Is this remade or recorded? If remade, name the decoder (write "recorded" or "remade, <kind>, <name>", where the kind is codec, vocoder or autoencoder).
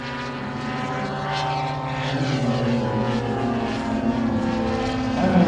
recorded